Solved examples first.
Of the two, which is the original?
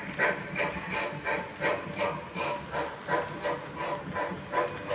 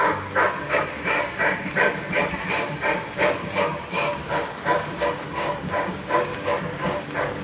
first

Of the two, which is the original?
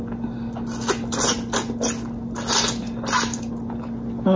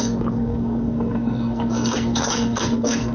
first